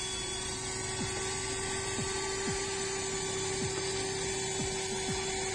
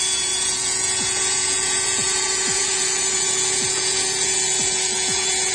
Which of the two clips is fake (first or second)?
second